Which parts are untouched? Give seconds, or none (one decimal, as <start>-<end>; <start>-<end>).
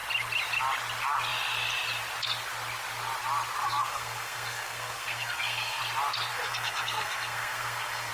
0.0-3.6; 5.8-6.3